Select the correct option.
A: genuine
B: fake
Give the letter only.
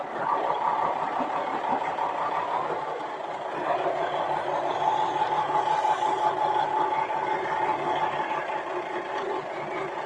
A